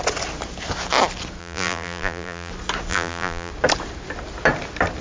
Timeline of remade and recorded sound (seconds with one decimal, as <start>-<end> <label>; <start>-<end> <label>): 0.0-1.4 recorded; 1.4-2.5 remade; 2.5-2.9 recorded; 2.9-3.5 remade; 3.5-5.0 recorded